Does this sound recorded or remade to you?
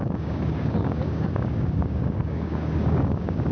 remade